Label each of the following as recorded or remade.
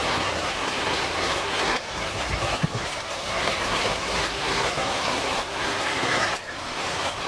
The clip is remade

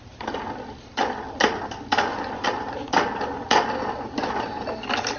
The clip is recorded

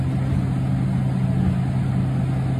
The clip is recorded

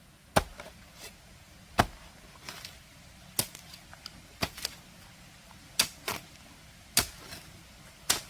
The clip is recorded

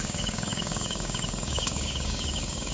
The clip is remade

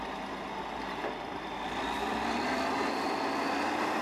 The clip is recorded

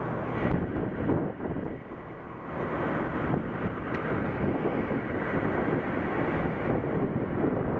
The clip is recorded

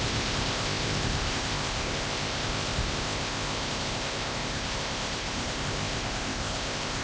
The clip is remade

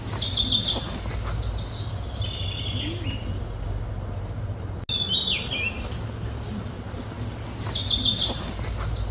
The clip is recorded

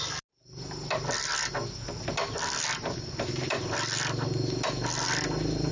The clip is recorded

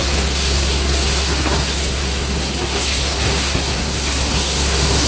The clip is remade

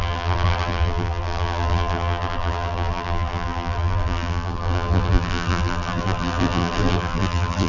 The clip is remade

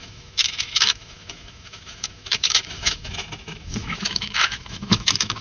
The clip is remade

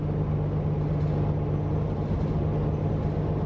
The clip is recorded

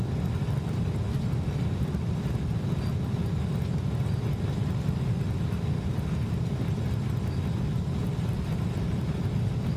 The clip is recorded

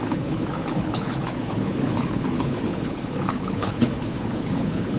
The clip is remade